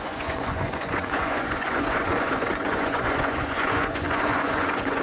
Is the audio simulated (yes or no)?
yes